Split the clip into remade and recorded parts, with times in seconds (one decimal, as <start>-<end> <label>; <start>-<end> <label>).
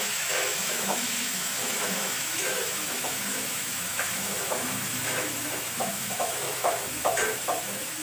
0.0-8.0 remade